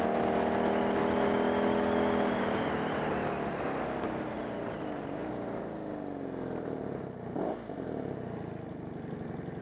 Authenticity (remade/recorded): recorded